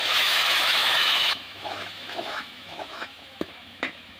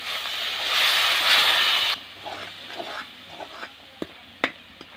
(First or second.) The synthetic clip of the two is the first